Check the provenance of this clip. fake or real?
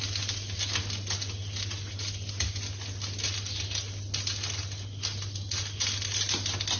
real